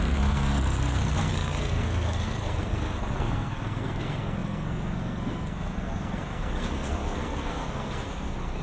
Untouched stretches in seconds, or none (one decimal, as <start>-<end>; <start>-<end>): none